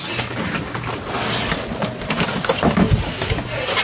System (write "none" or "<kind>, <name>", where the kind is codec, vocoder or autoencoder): none